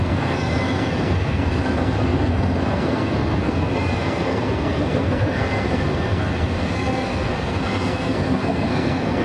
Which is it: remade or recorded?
remade